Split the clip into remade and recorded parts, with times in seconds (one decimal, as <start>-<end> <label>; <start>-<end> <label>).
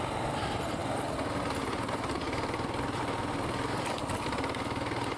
0.0-5.2 recorded